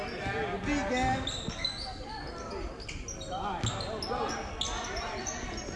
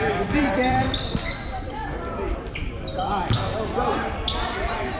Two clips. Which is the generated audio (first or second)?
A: second